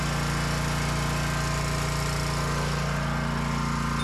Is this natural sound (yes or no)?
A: yes